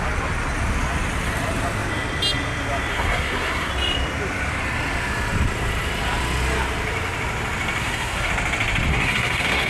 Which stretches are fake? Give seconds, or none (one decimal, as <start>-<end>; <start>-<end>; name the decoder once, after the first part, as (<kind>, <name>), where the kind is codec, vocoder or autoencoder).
2.9-3.7 (codec, SNAC); 7.8-8.3; 8.9-9.7